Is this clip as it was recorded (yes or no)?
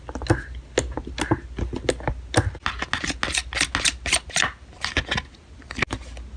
yes